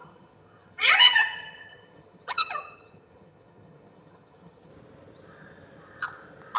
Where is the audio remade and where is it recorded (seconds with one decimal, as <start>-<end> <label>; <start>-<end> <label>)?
0.0-4.7 remade; 4.7-6.6 recorded